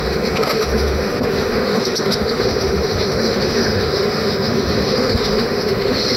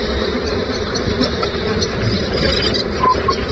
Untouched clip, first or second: second